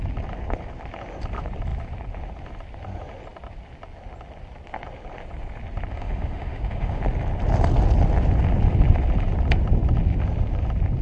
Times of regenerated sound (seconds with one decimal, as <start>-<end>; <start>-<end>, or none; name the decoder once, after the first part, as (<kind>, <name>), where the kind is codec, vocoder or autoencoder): 5.9-7.0 (autoencoder, DAC-VAE)